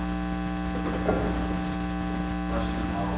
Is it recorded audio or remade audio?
recorded